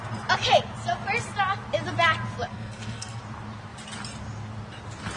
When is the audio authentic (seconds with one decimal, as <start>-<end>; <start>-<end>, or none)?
0.0-2.5; 3.2-5.2